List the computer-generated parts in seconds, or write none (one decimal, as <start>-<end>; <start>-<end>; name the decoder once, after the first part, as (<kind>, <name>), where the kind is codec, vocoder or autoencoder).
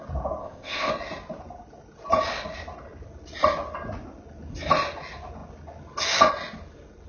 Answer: 0.4-0.9 (codec, ZipCodec)